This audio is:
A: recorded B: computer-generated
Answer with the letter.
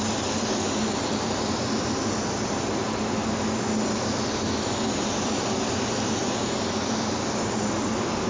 A